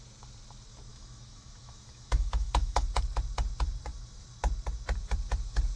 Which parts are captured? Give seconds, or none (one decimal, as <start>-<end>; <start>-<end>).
0.0-0.9; 2.8-5.8